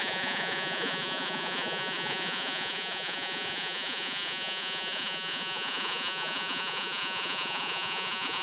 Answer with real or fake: fake